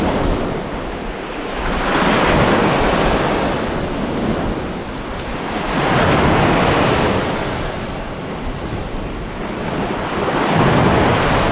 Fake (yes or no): no